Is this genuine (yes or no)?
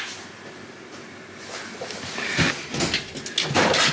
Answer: yes